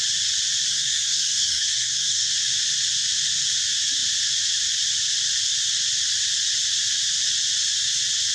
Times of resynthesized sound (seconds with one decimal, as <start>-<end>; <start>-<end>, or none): 0.7-2.3